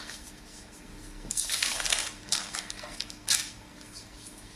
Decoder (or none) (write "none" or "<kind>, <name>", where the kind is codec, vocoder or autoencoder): codec, SNAC